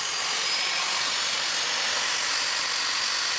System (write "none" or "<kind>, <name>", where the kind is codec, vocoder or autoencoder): none